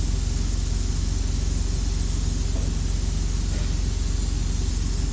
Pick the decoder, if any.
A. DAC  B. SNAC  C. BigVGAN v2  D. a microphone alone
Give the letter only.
D